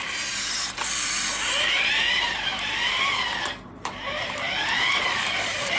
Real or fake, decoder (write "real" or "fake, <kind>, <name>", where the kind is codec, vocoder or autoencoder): fake, vocoder, BigVGAN v2